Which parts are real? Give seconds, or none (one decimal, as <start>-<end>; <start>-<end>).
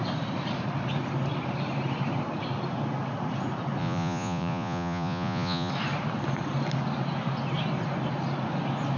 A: 0.0-3.8; 5.7-9.0